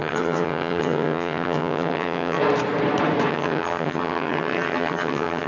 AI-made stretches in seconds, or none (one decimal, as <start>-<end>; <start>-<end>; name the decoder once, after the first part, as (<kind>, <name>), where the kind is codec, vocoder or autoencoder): 0.0-2.4 (vocoder, HiFi-GAN); 3.3-5.5